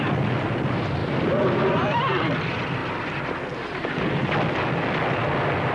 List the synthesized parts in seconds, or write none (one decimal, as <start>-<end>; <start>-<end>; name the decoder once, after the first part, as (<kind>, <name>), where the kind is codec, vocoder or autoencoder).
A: 1.0-2.4 (vocoder, BigVGAN v2)